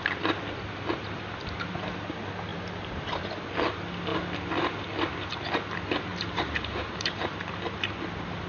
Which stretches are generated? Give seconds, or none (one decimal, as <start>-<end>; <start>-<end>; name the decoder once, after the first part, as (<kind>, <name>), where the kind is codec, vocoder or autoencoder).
2.5-3.2 (vocoder, BigVGAN v2); 6.1-7.2